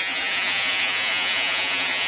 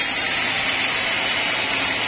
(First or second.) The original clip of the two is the second